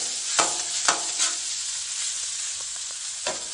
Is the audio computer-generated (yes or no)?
yes